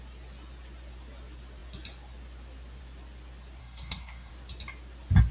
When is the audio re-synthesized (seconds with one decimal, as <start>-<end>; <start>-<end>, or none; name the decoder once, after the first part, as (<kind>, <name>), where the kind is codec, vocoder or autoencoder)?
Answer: 3.6-4.3 (codec, SNAC)